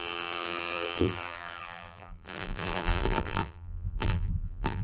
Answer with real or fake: fake